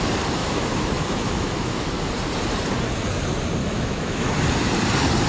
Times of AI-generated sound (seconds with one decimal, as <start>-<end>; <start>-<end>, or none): 0.4-2.1; 3.6-4.3